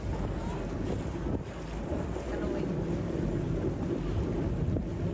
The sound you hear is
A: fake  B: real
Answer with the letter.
B